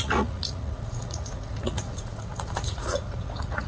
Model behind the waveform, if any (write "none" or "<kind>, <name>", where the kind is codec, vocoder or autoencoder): vocoder, Vocos